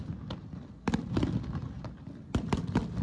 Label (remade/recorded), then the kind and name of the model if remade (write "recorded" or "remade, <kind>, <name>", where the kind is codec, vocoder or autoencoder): recorded